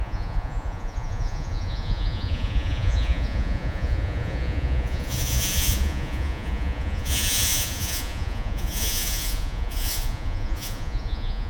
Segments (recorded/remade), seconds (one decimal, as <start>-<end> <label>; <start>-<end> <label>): 0.0-11.5 remade

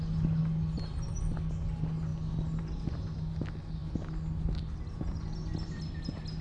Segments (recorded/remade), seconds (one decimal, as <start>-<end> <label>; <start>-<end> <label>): 0.0-6.4 recorded

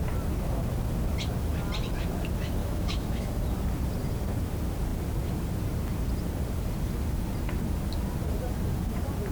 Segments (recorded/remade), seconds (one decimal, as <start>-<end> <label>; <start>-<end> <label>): 0.0-2.6 recorded; 2.6-3.3 remade; 3.3-9.3 recorded